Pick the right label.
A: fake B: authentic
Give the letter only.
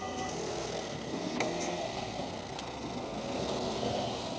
A